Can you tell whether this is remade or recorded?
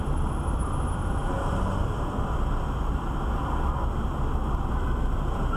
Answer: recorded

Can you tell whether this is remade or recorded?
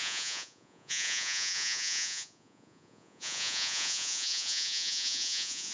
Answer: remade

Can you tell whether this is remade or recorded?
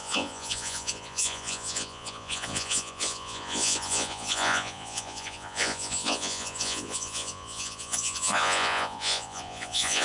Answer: remade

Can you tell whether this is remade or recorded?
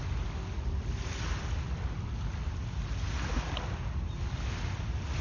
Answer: recorded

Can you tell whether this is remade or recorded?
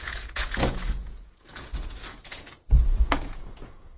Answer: remade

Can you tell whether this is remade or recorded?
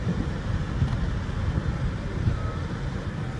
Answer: recorded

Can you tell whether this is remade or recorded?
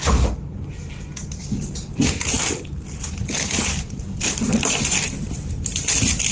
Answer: recorded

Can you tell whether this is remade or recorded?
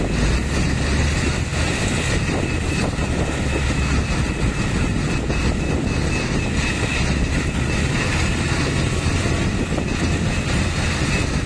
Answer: recorded